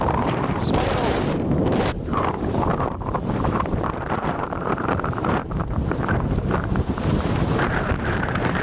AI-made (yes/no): yes